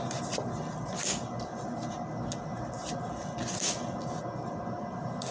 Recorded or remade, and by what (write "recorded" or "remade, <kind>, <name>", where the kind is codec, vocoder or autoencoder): recorded